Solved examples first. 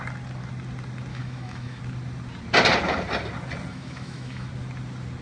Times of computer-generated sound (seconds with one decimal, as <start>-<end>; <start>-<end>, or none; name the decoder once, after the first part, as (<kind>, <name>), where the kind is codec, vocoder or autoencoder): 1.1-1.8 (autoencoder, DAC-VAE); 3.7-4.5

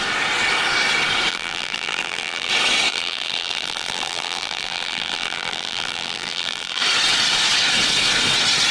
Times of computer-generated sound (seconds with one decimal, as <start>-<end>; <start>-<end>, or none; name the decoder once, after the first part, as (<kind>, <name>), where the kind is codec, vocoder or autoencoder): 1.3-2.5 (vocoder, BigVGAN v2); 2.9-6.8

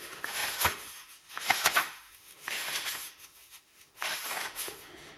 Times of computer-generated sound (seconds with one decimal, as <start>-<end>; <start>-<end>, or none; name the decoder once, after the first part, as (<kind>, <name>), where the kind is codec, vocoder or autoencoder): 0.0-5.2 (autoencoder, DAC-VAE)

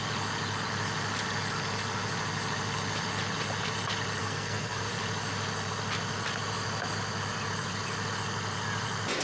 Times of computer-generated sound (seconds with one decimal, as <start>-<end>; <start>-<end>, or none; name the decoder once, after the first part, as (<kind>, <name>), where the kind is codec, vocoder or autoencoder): 4.2-4.9 (codec, SNAC)

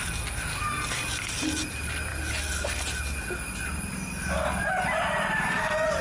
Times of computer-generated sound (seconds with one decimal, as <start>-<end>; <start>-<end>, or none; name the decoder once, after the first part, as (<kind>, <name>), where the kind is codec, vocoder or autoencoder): none

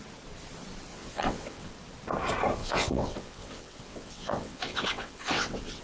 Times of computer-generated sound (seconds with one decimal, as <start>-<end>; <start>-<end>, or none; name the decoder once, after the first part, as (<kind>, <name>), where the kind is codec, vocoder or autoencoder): 0.9-1.7 (vocoder, WaveNeXt); 2.6-5.8